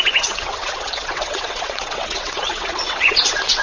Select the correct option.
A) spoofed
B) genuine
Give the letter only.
A